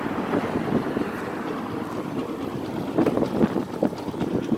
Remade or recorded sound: recorded